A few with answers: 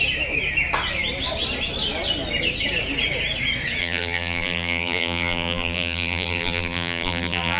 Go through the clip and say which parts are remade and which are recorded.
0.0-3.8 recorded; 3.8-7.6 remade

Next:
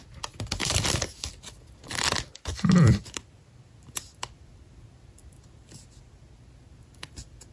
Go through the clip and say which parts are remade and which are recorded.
0.0-0.6 recorded; 0.6-1.5 remade; 1.5-2.3 recorded; 2.3-3.0 remade; 3.0-7.5 recorded

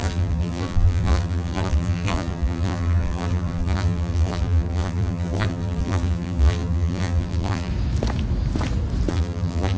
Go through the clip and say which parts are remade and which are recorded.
0.0-7.7 remade; 7.7-9.1 recorded; 9.1-9.8 remade

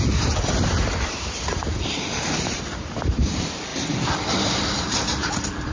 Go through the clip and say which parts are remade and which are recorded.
0.0-3.7 remade; 3.7-4.3 recorded; 4.3-5.7 remade

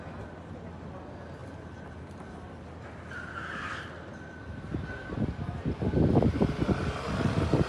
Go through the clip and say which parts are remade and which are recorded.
0.0-1.4 recorded; 1.4-2.7 remade; 2.7-7.7 recorded

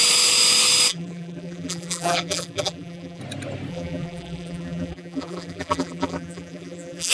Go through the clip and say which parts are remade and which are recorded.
0.0-0.9 recorded; 0.9-3.2 remade; 3.2-3.7 recorded; 3.7-7.1 remade

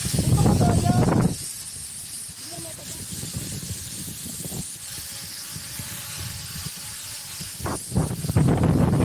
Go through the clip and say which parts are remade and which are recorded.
0.0-1.8 recorded; 1.8-3.4 remade; 3.4-9.0 recorded